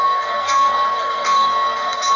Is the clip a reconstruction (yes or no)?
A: yes